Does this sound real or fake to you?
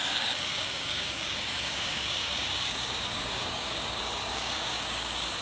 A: fake